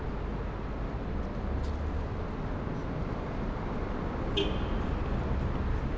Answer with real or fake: real